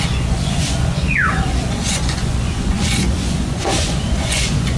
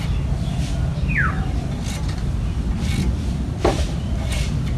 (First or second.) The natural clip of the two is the second